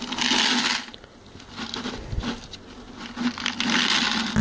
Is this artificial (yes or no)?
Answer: no